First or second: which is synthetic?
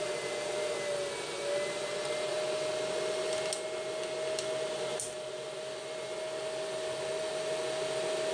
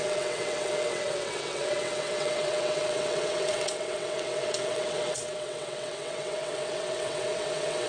second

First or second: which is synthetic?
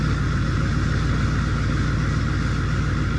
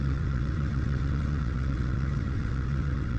second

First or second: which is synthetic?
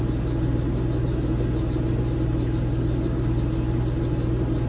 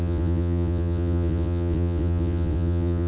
second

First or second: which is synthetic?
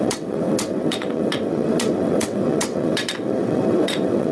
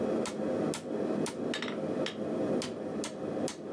first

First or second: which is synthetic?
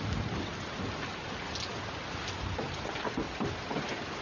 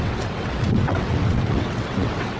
second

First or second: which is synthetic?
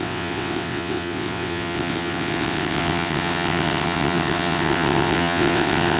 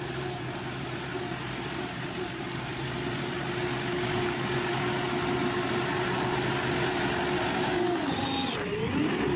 first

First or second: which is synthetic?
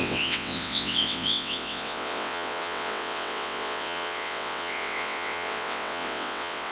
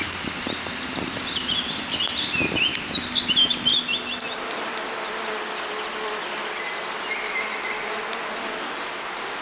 first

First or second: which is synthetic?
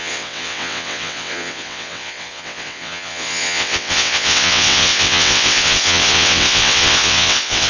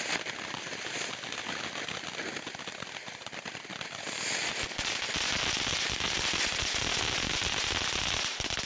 first